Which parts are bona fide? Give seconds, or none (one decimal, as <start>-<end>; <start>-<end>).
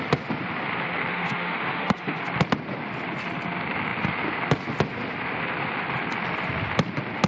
0.0-1.1; 2.2-7.3